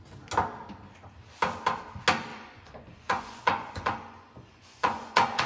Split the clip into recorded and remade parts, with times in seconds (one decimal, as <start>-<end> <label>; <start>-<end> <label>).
0.0-2.3 recorded; 2.3-5.5 remade